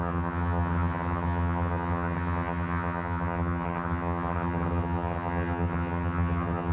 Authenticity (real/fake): fake